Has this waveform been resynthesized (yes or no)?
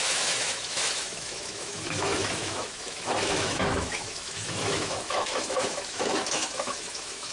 yes